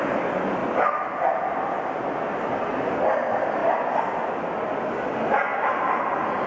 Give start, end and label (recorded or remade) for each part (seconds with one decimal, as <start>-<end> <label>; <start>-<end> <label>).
0.0-0.6 recorded; 0.6-1.1 remade; 1.1-5.5 recorded; 5.5-6.5 remade